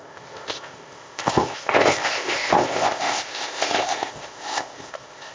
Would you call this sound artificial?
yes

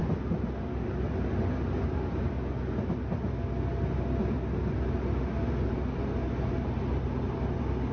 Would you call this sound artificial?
no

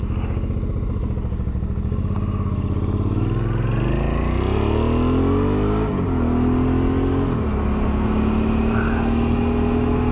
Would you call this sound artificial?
no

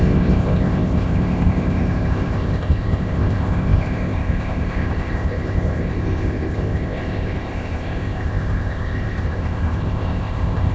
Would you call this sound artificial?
yes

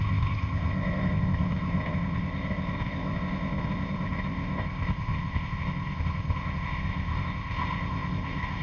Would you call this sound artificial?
yes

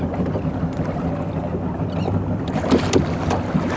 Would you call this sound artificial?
no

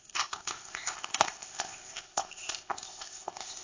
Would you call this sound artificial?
yes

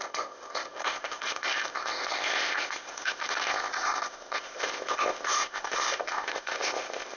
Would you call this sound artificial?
yes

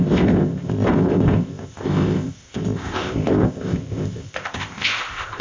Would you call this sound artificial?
yes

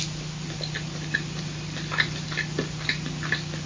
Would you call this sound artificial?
no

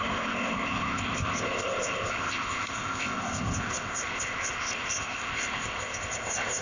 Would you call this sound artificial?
yes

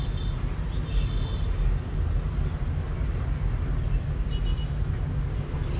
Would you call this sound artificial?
no